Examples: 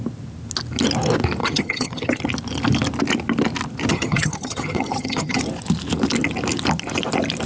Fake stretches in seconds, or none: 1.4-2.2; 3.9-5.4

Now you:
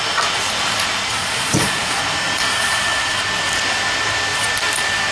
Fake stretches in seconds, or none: 1.1-2.0; 2.5-3.2